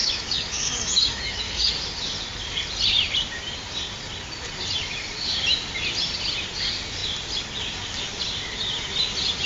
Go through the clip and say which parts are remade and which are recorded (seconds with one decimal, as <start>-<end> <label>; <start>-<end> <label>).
0.0-1.7 remade; 1.7-9.5 recorded